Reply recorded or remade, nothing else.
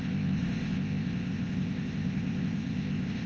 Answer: remade